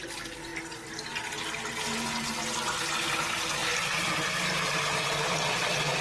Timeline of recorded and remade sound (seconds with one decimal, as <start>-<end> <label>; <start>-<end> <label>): 0.0-6.0 recorded